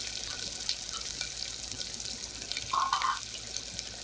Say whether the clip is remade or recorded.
recorded